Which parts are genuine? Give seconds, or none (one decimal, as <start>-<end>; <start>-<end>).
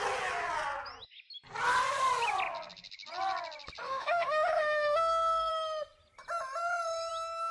0.0-3.8; 5.5-7.5